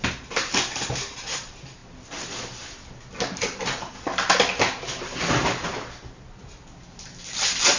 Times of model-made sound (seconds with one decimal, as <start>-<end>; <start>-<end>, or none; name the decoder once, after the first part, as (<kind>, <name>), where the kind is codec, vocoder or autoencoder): none